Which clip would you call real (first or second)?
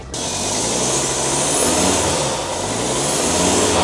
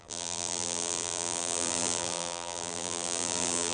first